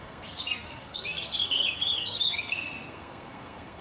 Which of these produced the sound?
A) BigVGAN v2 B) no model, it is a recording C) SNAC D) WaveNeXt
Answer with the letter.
C